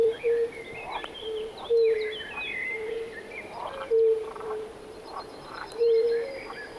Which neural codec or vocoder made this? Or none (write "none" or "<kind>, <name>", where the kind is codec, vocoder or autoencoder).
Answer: vocoder, BigVGAN v2